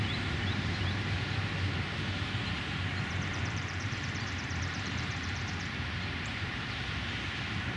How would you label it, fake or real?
fake